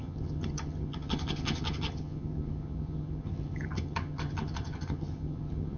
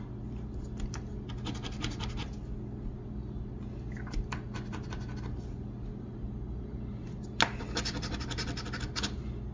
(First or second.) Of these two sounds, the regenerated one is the first